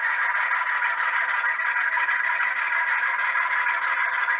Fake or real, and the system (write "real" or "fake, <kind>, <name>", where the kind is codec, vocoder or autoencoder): real